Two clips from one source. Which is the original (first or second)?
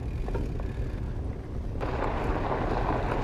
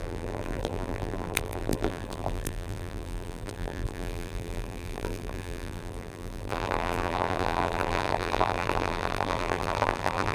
first